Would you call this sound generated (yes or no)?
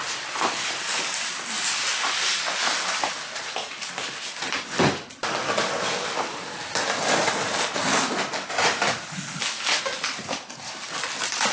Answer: no